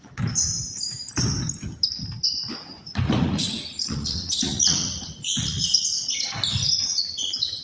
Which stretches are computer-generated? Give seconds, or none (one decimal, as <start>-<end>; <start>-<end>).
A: 2.6-7.0